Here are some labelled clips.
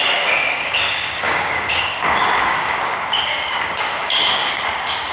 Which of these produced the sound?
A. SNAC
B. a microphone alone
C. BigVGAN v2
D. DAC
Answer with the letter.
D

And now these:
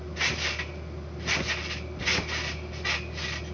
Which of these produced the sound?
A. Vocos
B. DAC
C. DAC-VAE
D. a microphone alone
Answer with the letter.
D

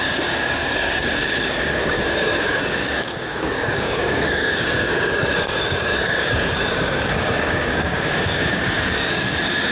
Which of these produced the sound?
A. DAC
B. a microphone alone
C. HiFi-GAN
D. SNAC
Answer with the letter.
A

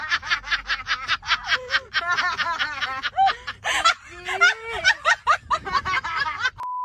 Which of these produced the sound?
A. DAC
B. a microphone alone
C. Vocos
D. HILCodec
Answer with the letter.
B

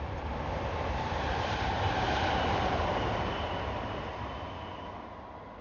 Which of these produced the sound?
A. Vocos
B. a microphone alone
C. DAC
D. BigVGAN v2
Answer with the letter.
B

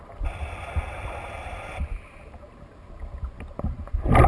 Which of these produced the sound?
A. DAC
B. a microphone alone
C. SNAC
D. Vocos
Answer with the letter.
B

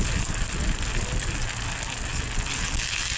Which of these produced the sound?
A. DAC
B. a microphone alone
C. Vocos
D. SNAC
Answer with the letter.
B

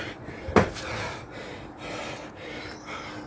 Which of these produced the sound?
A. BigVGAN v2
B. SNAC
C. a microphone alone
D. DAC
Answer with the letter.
C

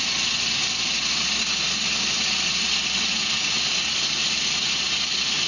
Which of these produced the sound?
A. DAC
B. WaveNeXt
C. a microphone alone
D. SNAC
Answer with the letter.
C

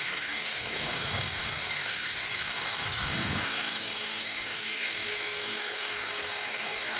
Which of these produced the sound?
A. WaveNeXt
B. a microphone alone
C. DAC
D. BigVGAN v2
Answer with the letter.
C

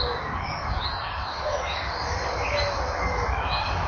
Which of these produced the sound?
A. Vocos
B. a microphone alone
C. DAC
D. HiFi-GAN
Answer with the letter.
C